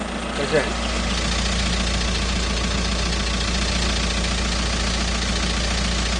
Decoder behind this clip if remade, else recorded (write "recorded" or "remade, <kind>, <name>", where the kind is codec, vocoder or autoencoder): recorded